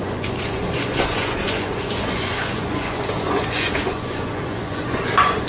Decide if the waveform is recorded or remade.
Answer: remade